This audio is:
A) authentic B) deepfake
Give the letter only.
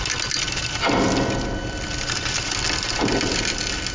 A